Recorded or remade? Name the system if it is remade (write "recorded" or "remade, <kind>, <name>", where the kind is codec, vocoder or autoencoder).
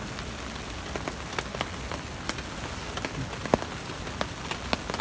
recorded